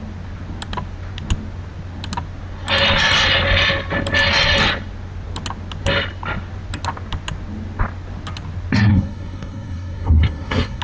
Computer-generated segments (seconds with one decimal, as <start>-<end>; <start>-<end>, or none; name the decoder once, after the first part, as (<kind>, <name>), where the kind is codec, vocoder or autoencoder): 8.9-10.8 (codec, SNAC)